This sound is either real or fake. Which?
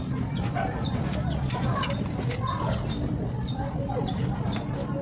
real